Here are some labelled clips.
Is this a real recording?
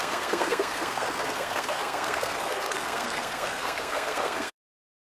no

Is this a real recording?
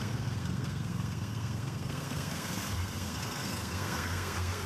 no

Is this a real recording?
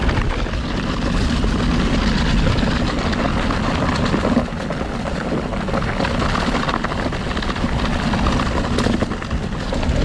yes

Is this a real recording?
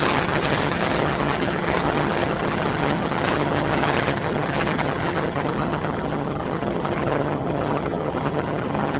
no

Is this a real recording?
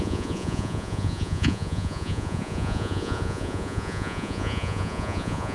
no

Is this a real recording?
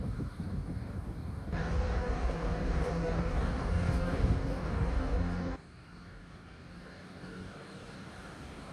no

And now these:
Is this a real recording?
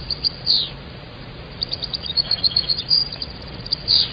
no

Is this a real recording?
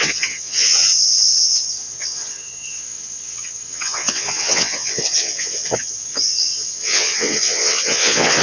no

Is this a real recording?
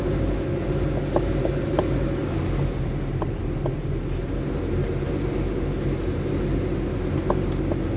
yes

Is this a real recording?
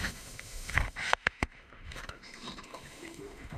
no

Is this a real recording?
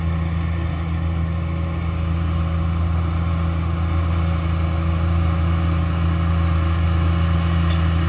yes